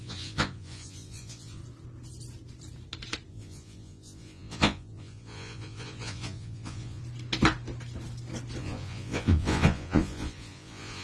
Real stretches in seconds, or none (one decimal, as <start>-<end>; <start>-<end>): 1.6-3.3; 7.0-8.6